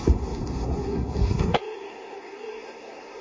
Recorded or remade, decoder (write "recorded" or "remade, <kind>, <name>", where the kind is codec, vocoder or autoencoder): remade, codec, SNAC